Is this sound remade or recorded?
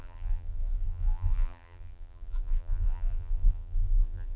remade